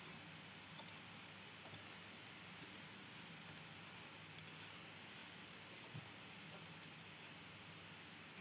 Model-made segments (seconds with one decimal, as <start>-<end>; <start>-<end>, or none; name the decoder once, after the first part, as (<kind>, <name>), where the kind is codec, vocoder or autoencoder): none